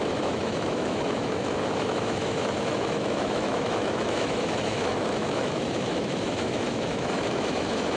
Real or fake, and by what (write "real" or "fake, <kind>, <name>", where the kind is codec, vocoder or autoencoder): fake, autoencoder, DAC-VAE